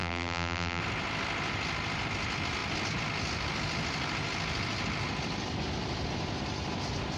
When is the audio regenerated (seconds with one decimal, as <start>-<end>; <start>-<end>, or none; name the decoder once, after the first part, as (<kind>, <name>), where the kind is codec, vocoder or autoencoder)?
0.0-0.8 (vocoder, BigVGAN v2)